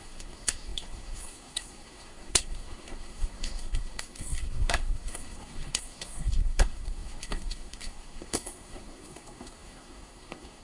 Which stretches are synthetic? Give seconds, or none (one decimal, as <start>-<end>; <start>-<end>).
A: 0.0-10.6